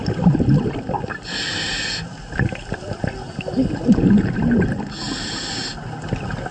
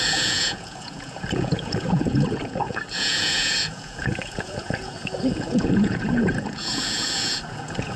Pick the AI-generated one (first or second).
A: second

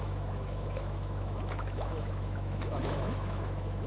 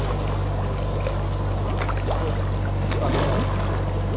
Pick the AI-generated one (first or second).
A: first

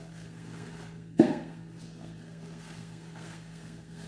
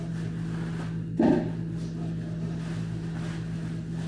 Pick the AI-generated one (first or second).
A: first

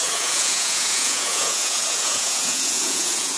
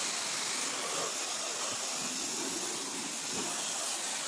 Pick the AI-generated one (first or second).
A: first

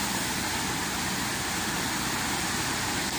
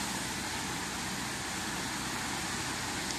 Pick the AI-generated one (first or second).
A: first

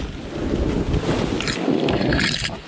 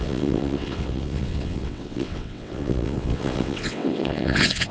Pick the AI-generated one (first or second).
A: second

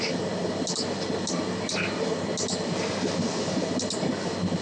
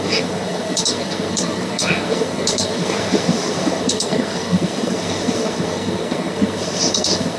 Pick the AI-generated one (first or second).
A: second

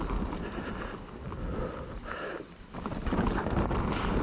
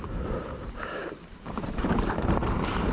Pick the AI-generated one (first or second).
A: second